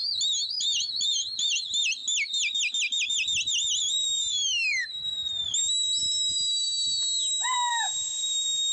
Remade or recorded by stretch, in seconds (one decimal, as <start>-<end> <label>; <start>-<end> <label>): 0.0-0.5 recorded; 0.5-2.0 remade; 2.0-3.8 recorded; 3.8-5.2 remade; 5.2-7.7 recorded; 7.7-8.7 remade